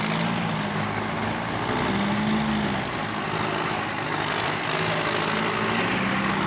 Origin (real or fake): real